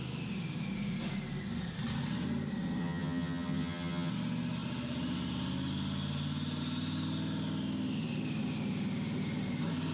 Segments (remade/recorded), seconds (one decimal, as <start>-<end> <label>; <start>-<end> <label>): 0.0-2.8 recorded; 2.8-4.1 remade; 4.1-9.9 recorded